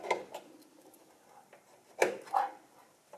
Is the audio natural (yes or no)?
yes